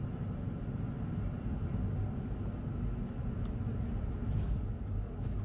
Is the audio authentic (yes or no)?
yes